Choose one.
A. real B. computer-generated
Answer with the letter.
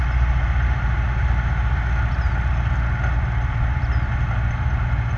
A